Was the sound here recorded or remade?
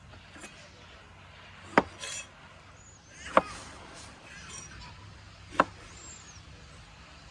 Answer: recorded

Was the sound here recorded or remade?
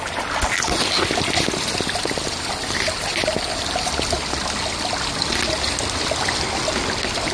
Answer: recorded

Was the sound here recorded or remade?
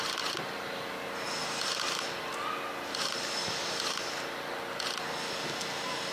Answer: recorded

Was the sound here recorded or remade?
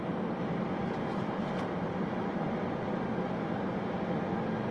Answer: recorded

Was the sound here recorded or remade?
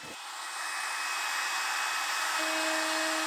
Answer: recorded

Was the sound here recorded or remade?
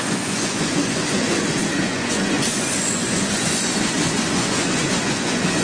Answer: remade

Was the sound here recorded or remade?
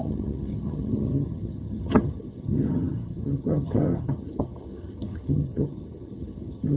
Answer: remade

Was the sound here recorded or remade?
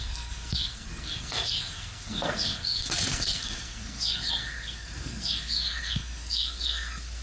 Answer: remade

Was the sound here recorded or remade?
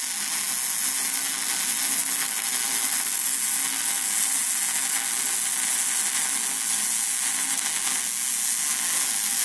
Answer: recorded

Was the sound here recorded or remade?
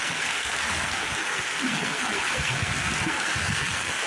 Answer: remade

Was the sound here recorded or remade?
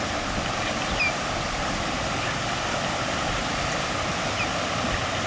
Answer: recorded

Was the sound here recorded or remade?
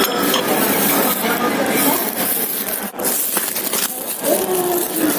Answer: recorded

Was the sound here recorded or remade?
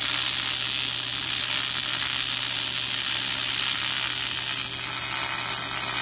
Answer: recorded